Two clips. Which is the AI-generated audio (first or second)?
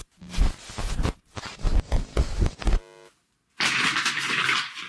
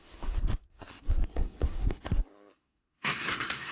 second